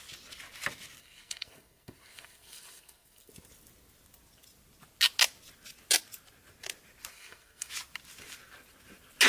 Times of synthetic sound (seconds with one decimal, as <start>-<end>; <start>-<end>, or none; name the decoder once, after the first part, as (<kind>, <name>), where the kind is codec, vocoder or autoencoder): 1.0-3.3 (codec, SNAC); 7.1-7.7